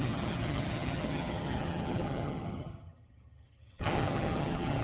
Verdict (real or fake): fake